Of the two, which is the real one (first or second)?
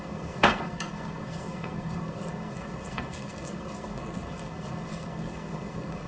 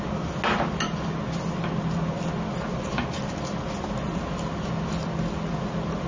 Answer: second